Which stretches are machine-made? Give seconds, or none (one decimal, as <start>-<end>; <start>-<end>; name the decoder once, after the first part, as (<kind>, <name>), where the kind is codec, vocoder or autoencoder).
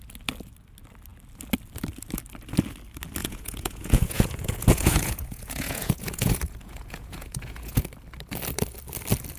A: 3.2-7.8 (vocoder, Vocos)